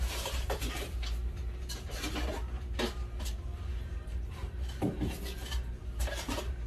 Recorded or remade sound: remade